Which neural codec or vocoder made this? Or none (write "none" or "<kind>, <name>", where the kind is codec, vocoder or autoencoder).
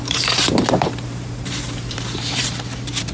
vocoder, BigVGAN v2